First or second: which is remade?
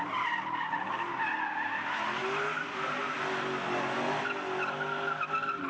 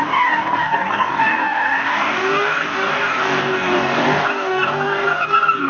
second